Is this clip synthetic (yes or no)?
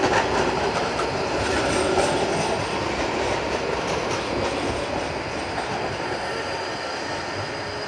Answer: no